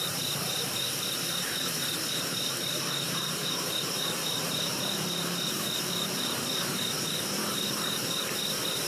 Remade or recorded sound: remade